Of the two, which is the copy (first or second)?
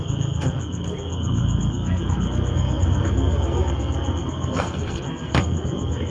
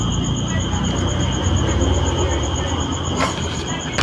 first